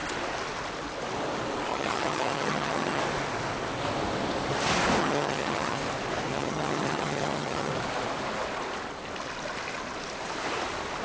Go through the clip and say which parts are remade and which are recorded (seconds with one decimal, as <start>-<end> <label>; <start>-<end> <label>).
0.0-1.7 recorded; 1.7-3.0 remade; 3.0-5.0 recorded; 5.0-5.8 remade; 5.8-6.3 recorded; 6.3-7.7 remade; 7.7-11.0 recorded

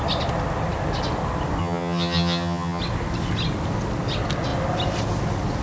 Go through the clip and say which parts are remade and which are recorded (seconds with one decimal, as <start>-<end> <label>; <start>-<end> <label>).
0.0-1.6 recorded; 1.6-2.8 remade; 2.8-5.6 recorded

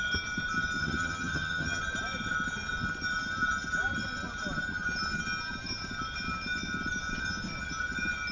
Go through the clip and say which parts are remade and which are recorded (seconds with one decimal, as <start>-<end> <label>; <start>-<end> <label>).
0.0-0.8 recorded; 0.8-1.8 remade; 1.8-8.3 recorded

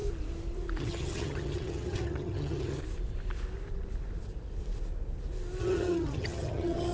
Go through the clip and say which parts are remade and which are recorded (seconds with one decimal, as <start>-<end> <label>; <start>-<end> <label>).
0.0-0.8 recorded; 0.8-2.8 remade; 2.8-5.6 recorded; 5.6-6.9 remade

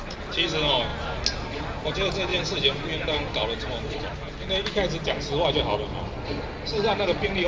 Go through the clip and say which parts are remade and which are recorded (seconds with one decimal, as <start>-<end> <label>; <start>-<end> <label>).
0.0-7.5 recorded

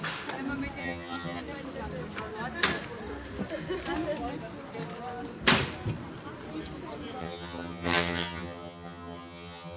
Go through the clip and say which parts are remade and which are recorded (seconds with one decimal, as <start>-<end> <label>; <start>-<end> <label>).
0.0-0.8 recorded; 0.8-1.4 remade; 1.4-7.2 recorded; 7.2-9.8 remade

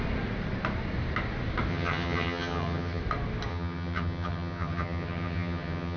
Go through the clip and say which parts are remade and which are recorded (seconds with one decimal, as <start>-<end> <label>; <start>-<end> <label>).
0.0-1.7 recorded; 1.7-3.0 remade; 3.0-3.5 recorded; 3.5-6.0 remade